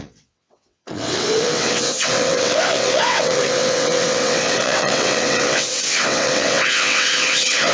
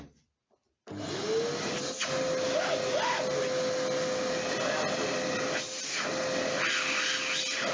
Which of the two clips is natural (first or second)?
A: second